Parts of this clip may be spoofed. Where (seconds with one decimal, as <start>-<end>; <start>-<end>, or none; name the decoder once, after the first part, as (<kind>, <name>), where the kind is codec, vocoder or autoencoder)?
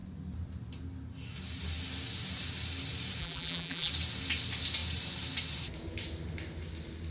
3.2-3.9 (vocoder, BigVGAN v2)